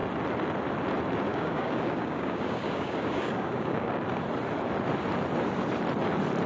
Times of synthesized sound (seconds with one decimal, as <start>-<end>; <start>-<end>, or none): 1.3-3.9